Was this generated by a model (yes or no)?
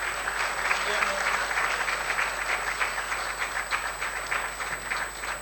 no